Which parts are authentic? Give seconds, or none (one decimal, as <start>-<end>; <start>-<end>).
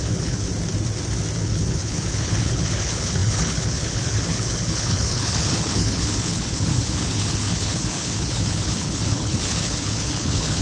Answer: 0.5-1.4